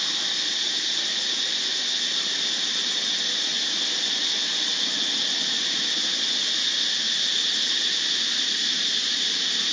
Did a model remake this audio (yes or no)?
no